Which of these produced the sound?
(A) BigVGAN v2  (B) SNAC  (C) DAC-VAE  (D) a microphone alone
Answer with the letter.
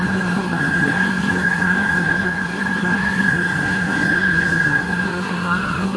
B